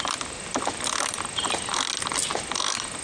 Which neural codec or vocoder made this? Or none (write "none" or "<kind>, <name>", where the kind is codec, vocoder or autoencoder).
none